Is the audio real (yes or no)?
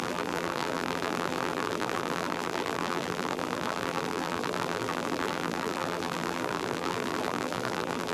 no